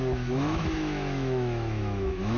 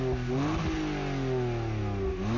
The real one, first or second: second